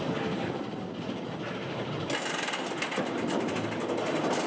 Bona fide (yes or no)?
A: yes